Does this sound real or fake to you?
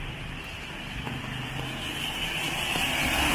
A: real